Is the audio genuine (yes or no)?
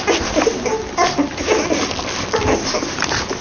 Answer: yes